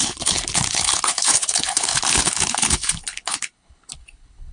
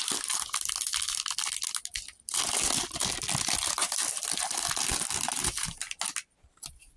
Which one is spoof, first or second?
first